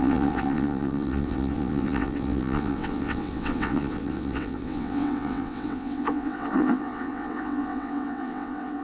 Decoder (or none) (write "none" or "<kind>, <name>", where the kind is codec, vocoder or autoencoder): vocoder, WaveNeXt